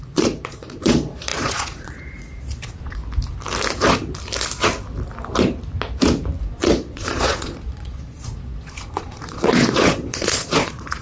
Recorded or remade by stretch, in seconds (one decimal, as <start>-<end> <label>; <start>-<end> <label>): 0.0-3.0 remade; 3.0-6.4 recorded; 6.4-11.0 remade